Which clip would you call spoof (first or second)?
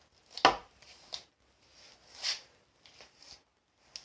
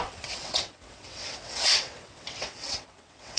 second